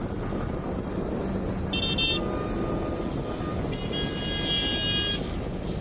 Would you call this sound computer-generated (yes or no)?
no